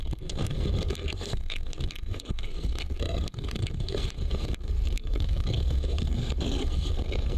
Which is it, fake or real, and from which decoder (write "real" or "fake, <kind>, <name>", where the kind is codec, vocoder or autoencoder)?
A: fake, codec, SNAC